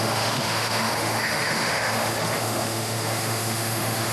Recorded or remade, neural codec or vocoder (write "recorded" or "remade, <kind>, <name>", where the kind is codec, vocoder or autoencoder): remade, autoencoder, DAC-VAE